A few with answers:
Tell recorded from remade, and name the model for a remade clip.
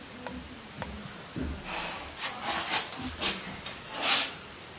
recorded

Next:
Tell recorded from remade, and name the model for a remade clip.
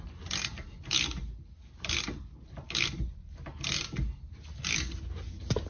recorded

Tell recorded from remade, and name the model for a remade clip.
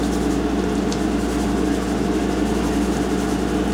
recorded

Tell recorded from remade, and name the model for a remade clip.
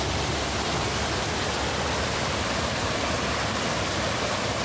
remade, vocoder, BigVGAN v2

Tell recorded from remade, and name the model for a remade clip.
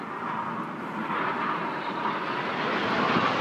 recorded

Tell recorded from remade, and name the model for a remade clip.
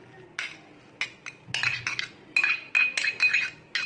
recorded